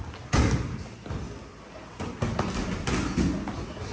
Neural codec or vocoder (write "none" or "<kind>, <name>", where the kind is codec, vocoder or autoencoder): none